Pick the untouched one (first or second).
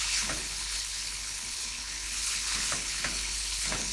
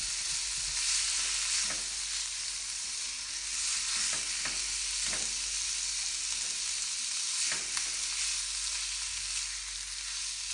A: second